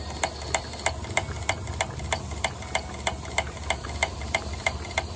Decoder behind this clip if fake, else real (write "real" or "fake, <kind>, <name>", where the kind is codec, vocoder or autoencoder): real